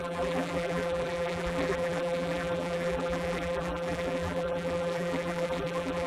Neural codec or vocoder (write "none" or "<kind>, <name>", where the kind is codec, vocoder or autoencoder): vocoder, BigVGAN v2